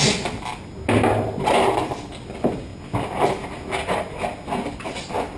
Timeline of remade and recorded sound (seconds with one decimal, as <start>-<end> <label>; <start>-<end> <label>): 0.0-5.4 recorded

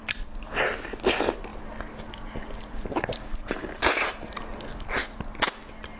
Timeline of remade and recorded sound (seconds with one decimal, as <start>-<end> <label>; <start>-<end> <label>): 0.0-2.7 recorded; 2.7-4.4 remade; 4.4-6.0 recorded

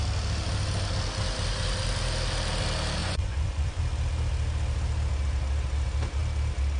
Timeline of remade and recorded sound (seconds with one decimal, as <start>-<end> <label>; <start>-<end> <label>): 0.0-3.0 recorded; 3.0-3.8 remade; 3.8-6.8 recorded

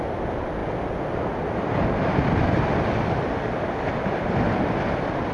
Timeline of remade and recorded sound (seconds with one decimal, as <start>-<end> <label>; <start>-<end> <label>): 0.0-5.3 recorded

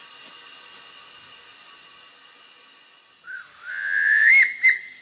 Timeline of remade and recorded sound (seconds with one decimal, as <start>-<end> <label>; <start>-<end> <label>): 0.0-3.7 recorded; 3.7-4.3 remade; 4.3-5.0 recorded

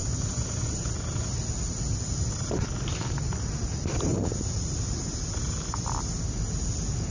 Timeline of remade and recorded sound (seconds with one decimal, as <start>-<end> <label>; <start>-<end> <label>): 0.0-0.9 remade; 0.9-7.1 recorded

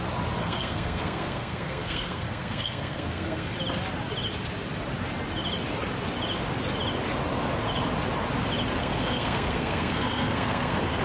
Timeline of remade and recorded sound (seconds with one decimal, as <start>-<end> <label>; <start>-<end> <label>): 0.0-0.4 recorded; 0.4-3.5 remade; 3.5-8.8 recorded; 8.8-11.0 remade